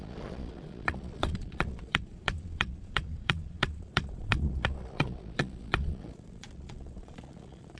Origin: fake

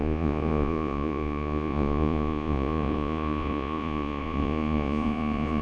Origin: fake